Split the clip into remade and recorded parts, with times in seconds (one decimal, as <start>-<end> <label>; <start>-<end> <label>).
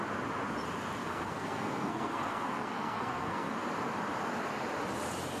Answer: 0.0-1.0 recorded; 1.0-3.5 remade; 3.5-5.4 recorded